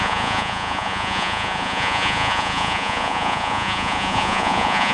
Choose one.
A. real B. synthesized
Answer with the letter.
B